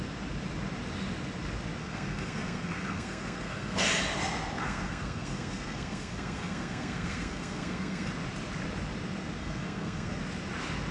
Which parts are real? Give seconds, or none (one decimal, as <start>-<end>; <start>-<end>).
0.0-1.8; 3.8-4.6; 8.1-9.4; 10.2-10.9